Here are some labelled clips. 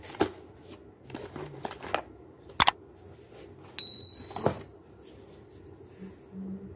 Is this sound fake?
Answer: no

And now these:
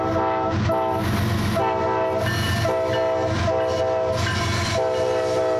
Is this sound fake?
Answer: no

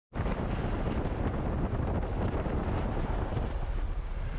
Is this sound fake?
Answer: no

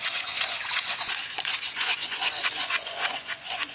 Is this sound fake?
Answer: yes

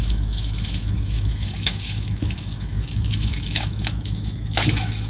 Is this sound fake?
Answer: yes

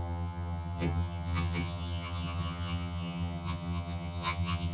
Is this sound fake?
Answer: yes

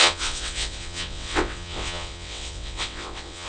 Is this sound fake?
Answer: yes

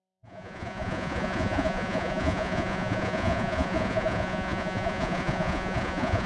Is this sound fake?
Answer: yes